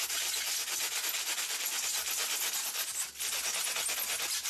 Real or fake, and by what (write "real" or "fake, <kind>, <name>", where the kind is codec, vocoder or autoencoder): real